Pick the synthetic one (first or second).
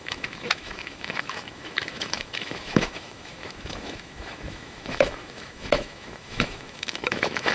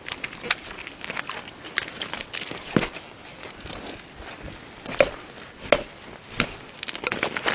first